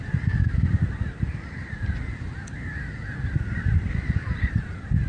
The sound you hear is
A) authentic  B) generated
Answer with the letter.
B